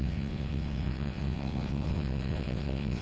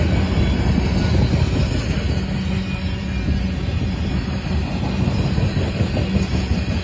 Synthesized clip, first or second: first